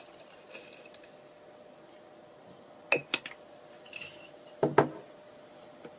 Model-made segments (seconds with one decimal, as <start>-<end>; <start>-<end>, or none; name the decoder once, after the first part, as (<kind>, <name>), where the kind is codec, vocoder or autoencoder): 3.0-4.7 (vocoder, BigVGAN v2)